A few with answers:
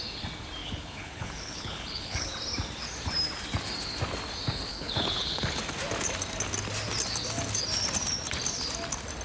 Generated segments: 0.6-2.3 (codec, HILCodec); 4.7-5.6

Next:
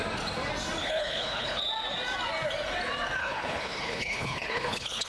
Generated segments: 0.8-1.6 (codec, HILCodec); 3.2-5.1

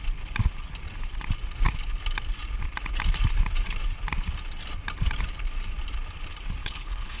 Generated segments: 6.6-7.2 (codec, HILCodec)

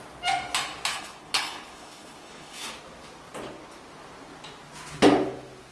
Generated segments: 0.9-2.7 (codec, HILCodec)